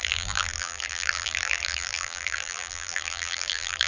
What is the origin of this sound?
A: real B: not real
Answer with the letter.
B